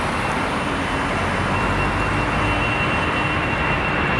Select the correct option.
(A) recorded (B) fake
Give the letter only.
A